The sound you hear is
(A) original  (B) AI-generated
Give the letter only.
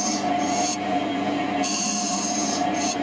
B